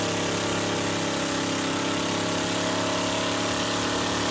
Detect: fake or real real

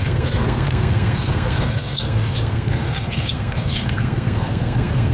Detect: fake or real fake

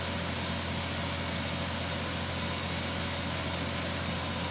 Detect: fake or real real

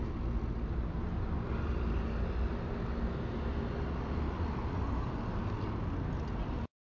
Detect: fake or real real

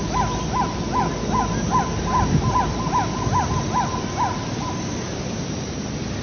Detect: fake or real real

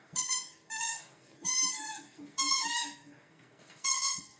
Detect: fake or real fake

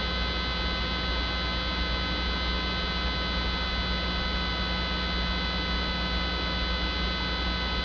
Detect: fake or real real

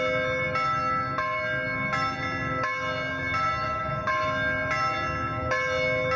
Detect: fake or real real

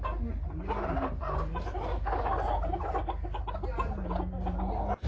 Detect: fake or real real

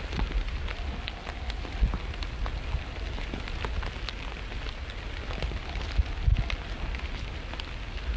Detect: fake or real real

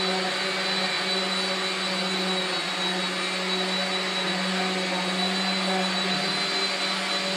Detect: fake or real real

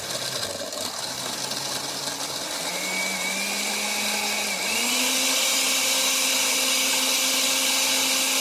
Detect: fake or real real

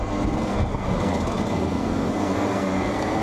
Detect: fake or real fake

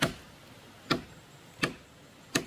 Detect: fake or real real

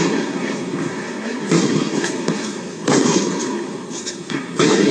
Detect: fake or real fake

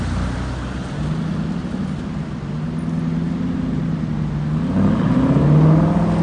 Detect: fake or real real